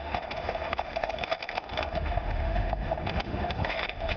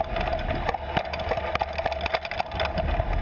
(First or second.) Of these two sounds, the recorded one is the second